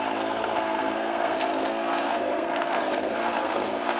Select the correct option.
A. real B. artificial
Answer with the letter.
B